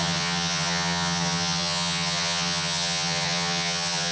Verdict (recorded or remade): remade